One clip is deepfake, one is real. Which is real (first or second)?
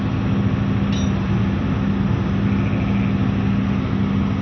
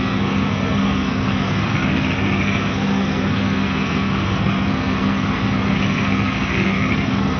first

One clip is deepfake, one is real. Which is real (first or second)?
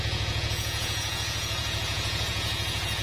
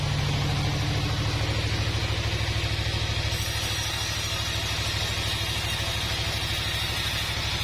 second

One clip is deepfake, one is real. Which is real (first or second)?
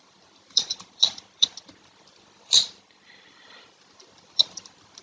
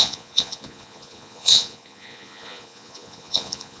first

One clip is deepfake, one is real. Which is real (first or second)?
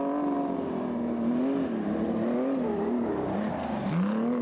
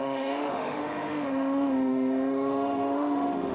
first